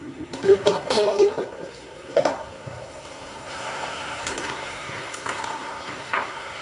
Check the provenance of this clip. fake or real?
fake